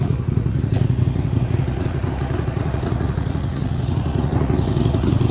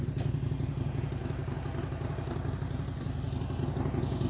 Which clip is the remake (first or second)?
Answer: first